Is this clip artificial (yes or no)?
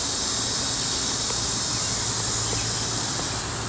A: no